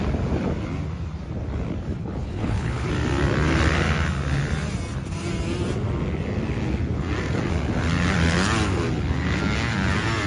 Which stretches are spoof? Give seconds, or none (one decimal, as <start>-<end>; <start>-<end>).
2.0-2.9